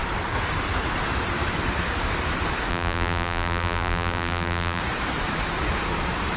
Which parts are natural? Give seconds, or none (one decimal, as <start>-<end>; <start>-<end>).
0.0-2.7; 4.8-6.4